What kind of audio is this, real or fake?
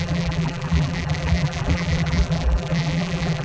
fake